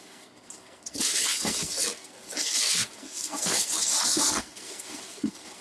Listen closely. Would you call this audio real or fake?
fake